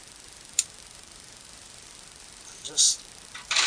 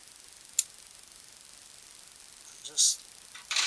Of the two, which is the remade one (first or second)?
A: first